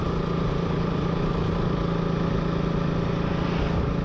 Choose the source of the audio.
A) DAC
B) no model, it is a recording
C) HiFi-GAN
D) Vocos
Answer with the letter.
B